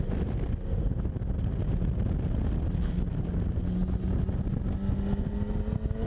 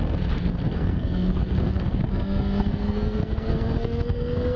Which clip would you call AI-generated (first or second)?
second